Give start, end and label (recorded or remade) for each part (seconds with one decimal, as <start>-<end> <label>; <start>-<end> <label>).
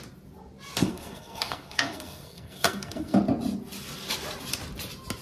0.0-0.8 recorded; 0.8-3.2 remade; 3.2-5.2 recorded